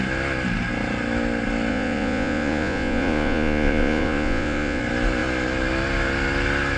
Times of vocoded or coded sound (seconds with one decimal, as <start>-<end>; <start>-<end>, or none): 1.7-4.8